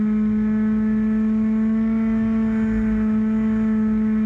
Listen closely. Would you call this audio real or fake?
real